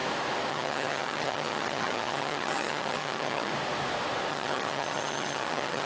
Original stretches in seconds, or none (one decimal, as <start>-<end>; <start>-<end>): 0.0-0.5; 3.5-4.3